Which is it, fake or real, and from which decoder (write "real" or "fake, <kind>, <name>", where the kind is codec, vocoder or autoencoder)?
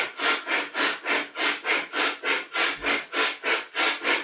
real